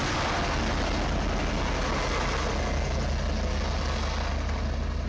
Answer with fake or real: real